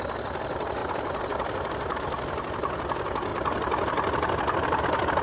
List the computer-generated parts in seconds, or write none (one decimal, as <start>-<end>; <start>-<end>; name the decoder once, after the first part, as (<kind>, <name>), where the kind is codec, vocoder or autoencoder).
none